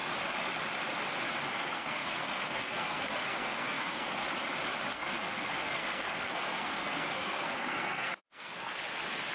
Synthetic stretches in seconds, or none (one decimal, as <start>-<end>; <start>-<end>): 1.5-4.2; 4.9-8.7